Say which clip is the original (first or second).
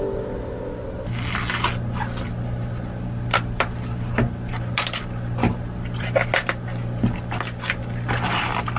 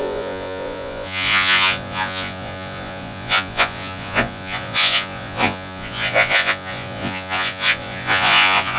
first